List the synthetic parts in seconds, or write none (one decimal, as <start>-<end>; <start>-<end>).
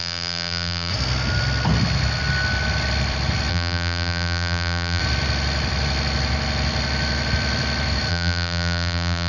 0.0-0.9; 3.5-5.0; 8.1-9.3